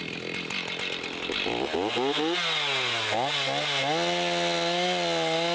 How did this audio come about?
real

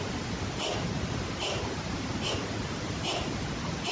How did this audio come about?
real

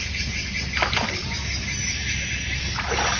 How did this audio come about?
real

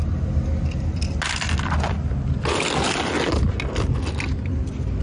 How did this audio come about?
real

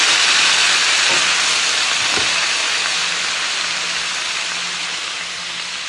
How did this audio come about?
real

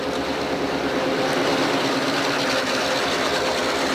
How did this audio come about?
real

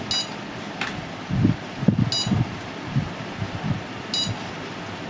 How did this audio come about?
real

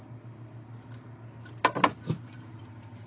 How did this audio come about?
real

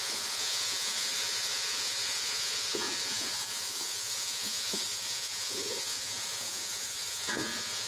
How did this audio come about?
fake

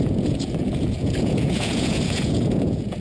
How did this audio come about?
fake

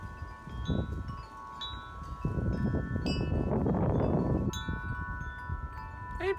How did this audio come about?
real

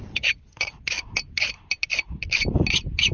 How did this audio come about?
real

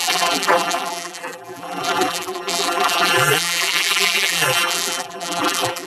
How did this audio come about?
fake